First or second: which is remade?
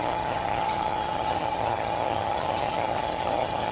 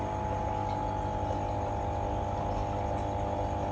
first